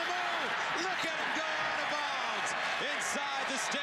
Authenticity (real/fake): real